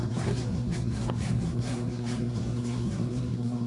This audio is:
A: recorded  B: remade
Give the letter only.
B